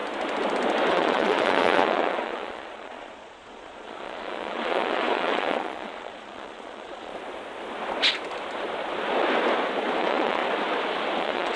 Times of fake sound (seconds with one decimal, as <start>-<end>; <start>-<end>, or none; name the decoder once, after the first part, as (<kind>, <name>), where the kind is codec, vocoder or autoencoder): 0.9-7.1 (vocoder, Vocos); 10.0-10.4; 11.2-11.6